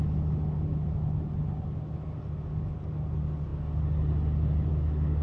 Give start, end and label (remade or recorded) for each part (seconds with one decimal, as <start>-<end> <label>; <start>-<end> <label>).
0.0-5.2 recorded